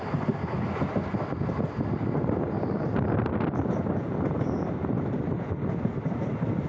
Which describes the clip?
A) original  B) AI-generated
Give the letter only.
A